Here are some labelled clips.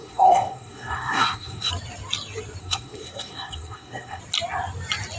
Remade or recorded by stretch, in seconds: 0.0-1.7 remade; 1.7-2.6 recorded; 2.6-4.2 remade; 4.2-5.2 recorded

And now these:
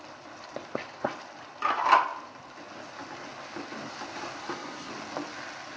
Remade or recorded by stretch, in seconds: 0.0-4.4 recorded; 4.4-4.9 remade; 4.9-5.8 recorded

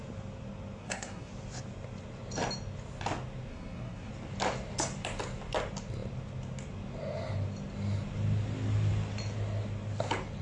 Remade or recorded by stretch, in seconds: 0.0-0.8 recorded; 0.8-1.3 remade; 1.3-3.5 recorded; 3.5-4.1 remade; 4.1-10.4 recorded

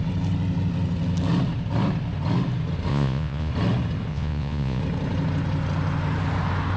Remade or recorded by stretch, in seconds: 0.0-2.9 recorded; 2.9-3.5 remade; 3.5-4.1 recorded; 4.1-4.8 remade; 4.8-6.8 recorded

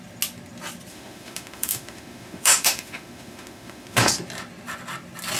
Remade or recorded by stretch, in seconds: 0.0-0.9 recorded; 0.9-4.1 remade; 4.1-5.4 recorded

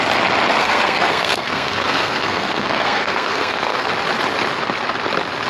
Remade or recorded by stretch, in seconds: 0.0-0.6 recorded; 0.6-3.9 remade; 3.9-5.5 recorded

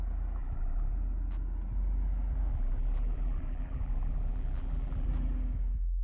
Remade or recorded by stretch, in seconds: 0.0-0.4 recorded; 0.4-0.9 remade; 0.9-2.5 recorded; 2.5-5.1 remade; 5.1-6.0 recorded

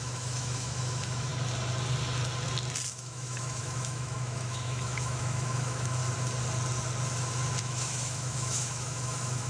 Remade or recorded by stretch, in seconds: 0.0-1.3 remade; 1.3-2.9 recorded; 2.9-6.0 remade; 6.0-7.6 recorded; 7.6-9.5 remade